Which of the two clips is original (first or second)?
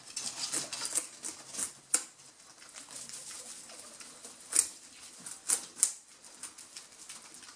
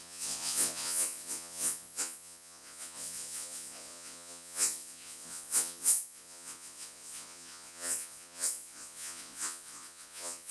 first